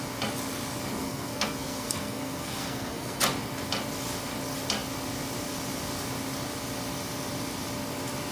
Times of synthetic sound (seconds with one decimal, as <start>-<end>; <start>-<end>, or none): 1.0-3.2